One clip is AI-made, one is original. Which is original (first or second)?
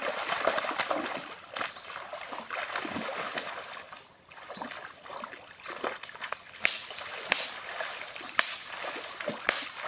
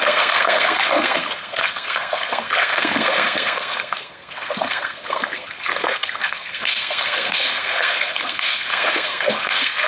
first